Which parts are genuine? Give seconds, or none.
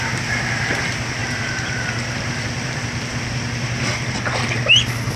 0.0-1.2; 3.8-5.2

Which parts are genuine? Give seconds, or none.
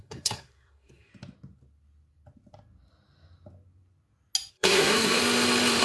1.1-4.5; 5.2-5.8